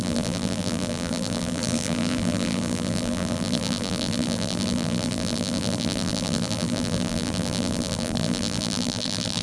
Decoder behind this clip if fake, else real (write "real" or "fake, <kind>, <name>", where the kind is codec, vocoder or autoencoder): fake, vocoder, BigVGAN v2